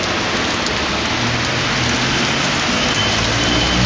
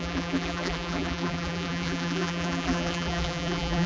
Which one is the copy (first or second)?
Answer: second